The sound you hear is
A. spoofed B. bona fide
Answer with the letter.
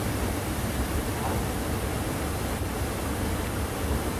B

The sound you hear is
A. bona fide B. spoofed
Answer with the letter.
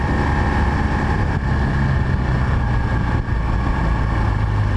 A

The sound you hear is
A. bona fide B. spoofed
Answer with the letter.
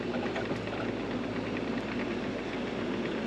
A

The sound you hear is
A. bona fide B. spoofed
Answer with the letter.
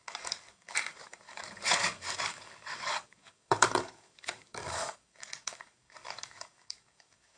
B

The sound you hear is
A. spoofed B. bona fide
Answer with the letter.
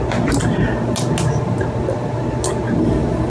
B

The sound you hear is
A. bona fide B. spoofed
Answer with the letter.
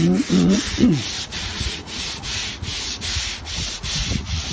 B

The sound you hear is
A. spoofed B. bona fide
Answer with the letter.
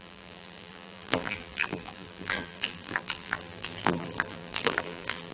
A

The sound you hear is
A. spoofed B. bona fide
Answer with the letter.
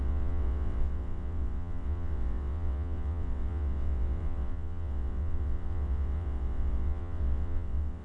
A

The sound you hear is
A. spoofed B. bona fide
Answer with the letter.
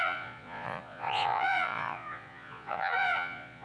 A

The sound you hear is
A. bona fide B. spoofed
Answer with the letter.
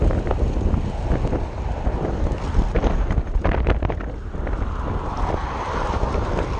A